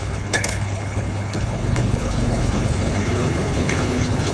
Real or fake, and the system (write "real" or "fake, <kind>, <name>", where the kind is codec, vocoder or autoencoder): fake, codec, HILCodec